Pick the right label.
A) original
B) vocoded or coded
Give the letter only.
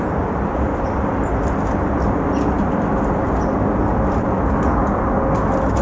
A